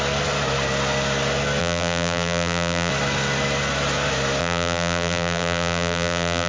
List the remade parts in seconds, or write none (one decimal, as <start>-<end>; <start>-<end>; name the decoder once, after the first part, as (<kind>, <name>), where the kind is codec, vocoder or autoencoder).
1.6-2.9 (vocoder, BigVGAN v2); 4.4-6.5